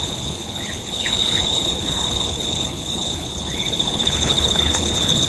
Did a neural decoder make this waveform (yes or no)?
yes